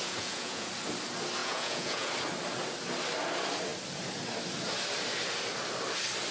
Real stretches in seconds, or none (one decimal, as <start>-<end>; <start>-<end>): 0.7-1.4; 2.1-6.3